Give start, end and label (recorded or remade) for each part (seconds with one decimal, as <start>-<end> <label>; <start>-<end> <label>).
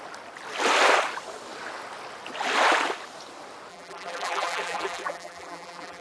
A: 0.0-3.7 recorded; 3.7-6.0 remade